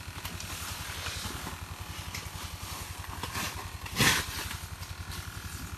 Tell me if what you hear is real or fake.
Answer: real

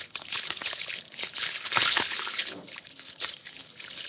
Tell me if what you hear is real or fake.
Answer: fake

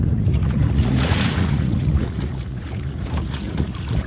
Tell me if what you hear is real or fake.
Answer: fake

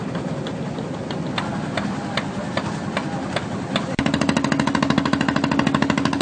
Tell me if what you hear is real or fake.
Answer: real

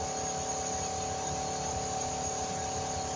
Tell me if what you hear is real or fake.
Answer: real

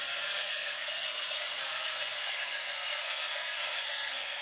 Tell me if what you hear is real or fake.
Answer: fake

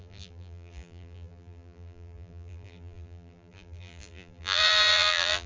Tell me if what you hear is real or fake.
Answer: fake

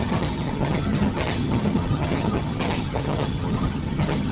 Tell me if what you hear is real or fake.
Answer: fake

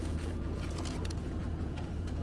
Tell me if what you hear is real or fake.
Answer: fake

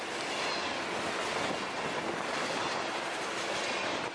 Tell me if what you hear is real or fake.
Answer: real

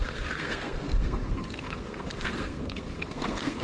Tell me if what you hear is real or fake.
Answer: fake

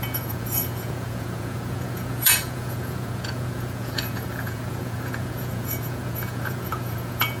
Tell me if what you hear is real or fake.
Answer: fake